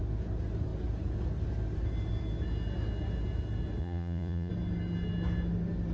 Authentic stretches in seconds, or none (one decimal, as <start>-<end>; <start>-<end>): 0.0-3.8; 4.5-5.9